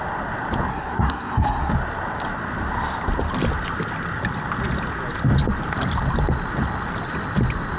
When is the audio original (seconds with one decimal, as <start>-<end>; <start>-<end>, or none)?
0.0-0.7; 1.7-7.8